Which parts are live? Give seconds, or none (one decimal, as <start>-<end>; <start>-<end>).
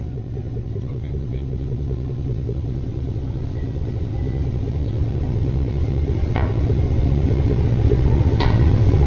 none